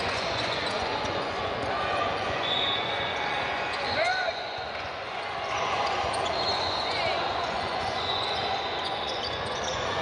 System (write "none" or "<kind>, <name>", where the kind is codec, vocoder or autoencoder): vocoder, Vocos